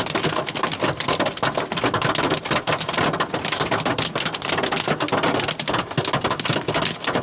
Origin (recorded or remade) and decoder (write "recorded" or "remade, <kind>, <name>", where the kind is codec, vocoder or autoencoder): recorded